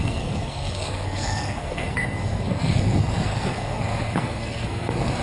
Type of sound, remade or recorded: remade